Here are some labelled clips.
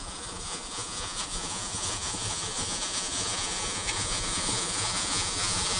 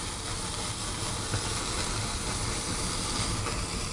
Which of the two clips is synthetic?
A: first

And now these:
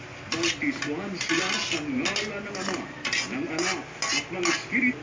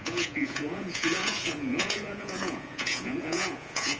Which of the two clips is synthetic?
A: second